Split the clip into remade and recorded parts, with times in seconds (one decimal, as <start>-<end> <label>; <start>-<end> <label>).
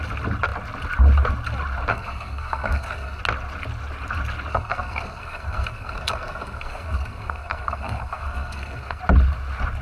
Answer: 0.0-1.9 recorded; 1.9-3.2 remade; 3.2-4.5 recorded; 4.5-9.0 remade; 9.0-9.8 recorded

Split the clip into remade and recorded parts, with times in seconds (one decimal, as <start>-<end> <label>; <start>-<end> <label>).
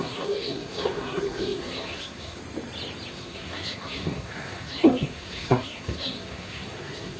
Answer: 0.0-2.4 remade; 2.4-3.1 recorded; 3.1-7.2 remade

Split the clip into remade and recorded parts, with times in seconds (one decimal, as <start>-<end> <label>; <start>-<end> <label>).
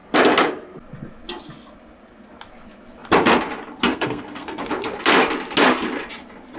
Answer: 0.0-3.9 recorded; 3.9-4.6 remade; 4.6-6.6 recorded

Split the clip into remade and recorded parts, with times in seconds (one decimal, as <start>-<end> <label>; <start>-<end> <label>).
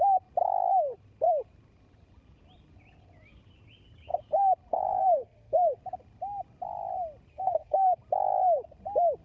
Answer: 0.0-4.7 recorded; 4.7-5.8 remade; 5.8-7.3 recorded; 7.3-8.0 remade; 8.0-9.2 recorded